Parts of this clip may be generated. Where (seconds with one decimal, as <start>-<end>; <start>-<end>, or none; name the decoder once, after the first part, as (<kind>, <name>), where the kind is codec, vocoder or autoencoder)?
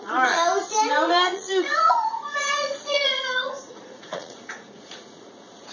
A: 0.0-0.5 (vocoder, Vocos); 1.1-5.7